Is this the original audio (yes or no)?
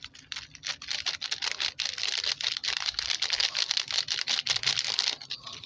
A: yes